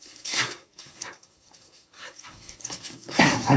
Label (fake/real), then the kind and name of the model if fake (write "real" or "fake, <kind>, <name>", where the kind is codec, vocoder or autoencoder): fake, codec, SNAC